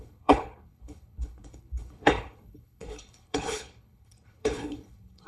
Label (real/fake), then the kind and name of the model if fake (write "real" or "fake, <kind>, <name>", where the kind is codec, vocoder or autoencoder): fake, codec, HILCodec